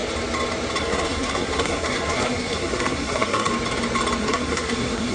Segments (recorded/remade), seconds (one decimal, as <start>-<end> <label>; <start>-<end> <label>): 0.0-0.8 recorded; 0.8-3.5 remade; 3.5-4.2 recorded; 4.2-5.1 remade

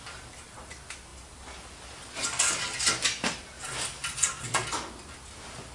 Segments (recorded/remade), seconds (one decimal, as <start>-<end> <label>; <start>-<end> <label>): 0.0-5.7 recorded

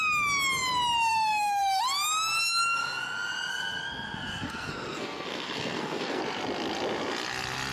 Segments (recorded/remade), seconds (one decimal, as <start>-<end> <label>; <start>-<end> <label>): 0.0-1.1 recorded; 1.1-1.8 remade; 1.8-3.5 recorded; 3.5-6.2 remade; 6.2-7.7 recorded

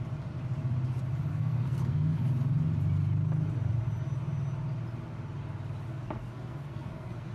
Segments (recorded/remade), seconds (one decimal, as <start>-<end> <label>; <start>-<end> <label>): 0.0-1.3 recorded; 1.3-2.2 remade; 2.2-5.9 recorded; 5.9-7.3 remade